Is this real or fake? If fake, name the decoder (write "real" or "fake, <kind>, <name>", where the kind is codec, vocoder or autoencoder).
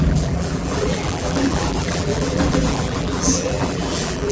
fake, vocoder, BigVGAN v2